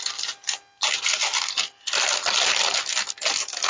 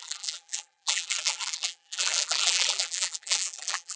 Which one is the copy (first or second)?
second